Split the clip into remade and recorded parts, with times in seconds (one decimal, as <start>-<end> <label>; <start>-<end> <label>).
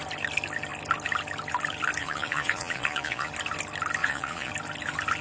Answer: 0.0-2.0 recorded; 2.0-3.3 remade; 3.3-4.0 recorded; 4.0-4.5 remade; 4.5-5.2 recorded